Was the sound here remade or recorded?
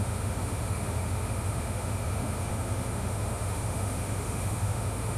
remade